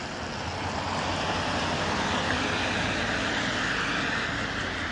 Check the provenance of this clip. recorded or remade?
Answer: recorded